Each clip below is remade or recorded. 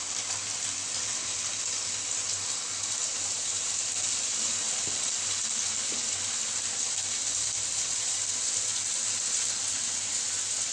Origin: recorded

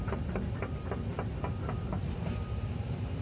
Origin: recorded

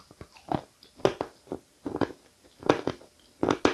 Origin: recorded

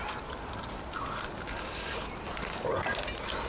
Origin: recorded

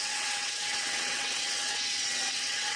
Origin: remade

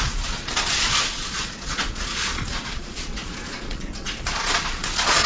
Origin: remade